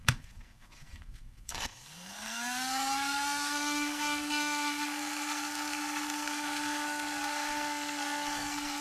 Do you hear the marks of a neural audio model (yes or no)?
yes